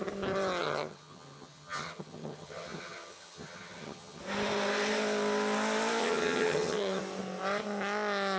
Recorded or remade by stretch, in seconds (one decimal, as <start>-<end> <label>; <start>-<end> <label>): 0.0-0.6 recorded; 0.6-4.2 remade; 4.2-6.0 recorded; 6.0-7.0 remade; 7.0-8.4 recorded